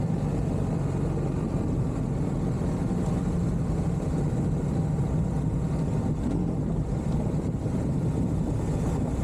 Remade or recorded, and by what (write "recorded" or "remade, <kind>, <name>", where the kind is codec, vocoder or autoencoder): recorded